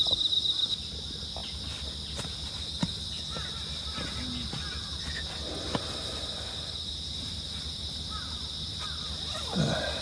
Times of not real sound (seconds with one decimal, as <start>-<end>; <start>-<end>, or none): none